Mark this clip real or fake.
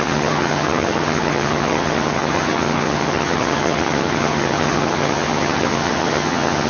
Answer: fake